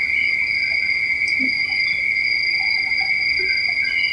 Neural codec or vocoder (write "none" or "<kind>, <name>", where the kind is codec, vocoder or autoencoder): none